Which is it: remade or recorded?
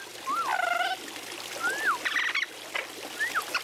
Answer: recorded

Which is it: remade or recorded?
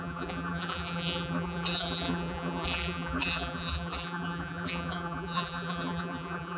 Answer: remade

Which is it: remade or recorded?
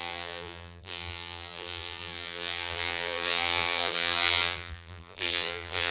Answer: remade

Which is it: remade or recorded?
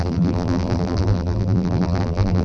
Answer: remade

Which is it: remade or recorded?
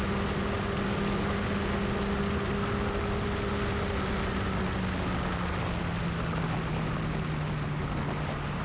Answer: recorded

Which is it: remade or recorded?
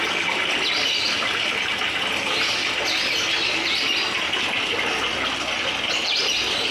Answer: recorded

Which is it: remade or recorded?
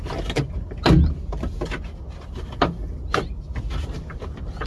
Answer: recorded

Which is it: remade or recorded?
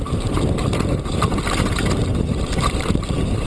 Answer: remade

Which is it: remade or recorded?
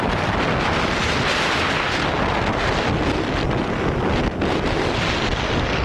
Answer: recorded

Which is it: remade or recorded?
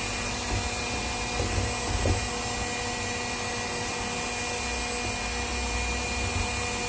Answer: recorded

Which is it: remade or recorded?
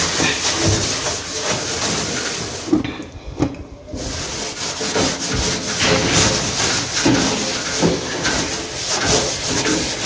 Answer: recorded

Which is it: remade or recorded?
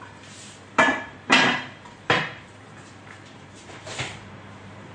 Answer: remade